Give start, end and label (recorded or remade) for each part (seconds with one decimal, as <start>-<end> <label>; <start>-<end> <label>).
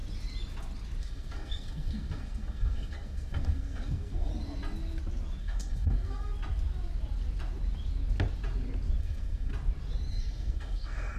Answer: 0.0-1.0 recorded; 1.0-4.3 remade; 4.3-5.4 recorded; 5.4-6.3 remade; 6.3-9.0 recorded; 9.0-9.5 remade; 9.5-10.1 recorded; 10.1-11.2 remade